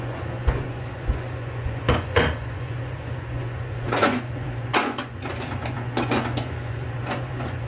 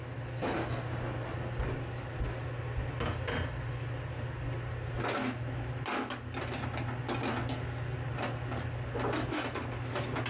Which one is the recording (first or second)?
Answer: second